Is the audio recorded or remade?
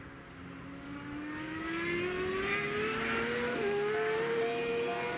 recorded